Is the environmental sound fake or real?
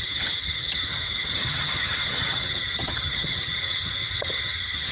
fake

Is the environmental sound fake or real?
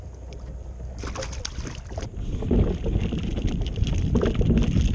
real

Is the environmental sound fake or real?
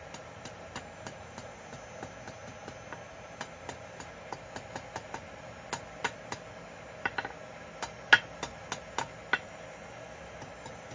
real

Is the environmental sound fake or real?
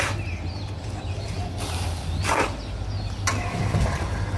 real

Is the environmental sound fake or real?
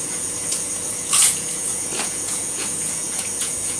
fake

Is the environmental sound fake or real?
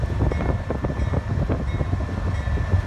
real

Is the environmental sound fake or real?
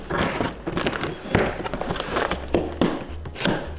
real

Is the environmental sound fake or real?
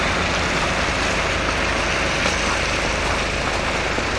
real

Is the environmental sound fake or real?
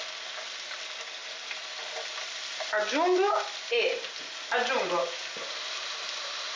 real